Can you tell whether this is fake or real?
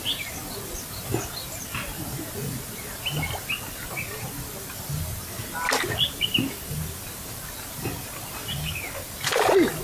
real